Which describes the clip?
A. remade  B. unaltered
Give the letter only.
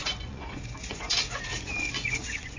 A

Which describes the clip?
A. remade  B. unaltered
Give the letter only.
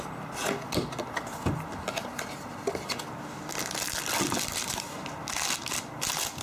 B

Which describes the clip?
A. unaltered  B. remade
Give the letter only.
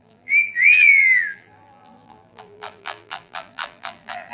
B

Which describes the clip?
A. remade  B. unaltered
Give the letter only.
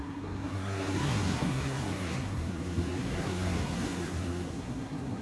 A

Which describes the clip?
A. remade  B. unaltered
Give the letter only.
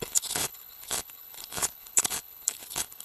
A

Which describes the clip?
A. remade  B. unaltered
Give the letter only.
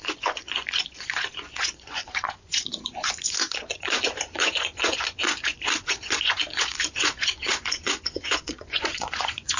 A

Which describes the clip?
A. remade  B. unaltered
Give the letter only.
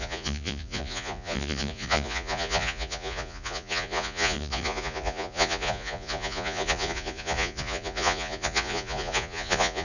A